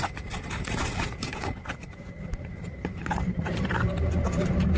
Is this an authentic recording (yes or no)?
no